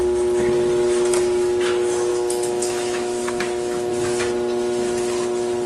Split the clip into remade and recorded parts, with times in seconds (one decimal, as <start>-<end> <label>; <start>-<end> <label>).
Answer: 0.0-2.1 recorded; 2.1-3.9 remade; 3.9-5.7 recorded